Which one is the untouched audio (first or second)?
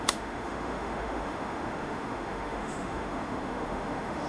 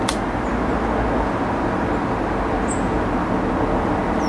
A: second